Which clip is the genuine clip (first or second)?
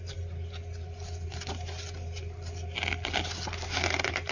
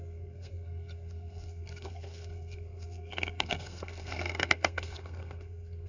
first